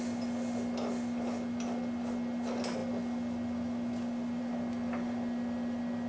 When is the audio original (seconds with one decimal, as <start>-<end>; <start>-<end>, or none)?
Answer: 0.0-6.1